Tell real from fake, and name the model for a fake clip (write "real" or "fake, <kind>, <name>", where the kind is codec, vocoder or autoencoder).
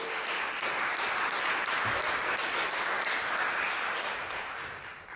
real